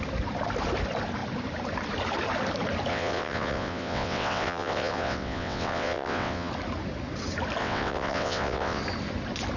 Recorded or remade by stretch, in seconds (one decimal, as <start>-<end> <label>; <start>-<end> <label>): 0.0-2.9 recorded; 2.9-6.5 remade; 6.5-7.6 recorded; 7.6-8.8 remade; 8.8-9.6 recorded